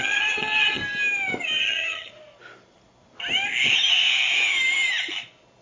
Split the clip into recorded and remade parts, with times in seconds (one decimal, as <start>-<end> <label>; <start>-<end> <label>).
0.0-0.8 remade; 0.8-1.6 recorded; 1.6-2.1 remade; 2.1-5.6 recorded